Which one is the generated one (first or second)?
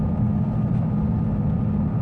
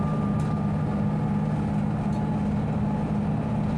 first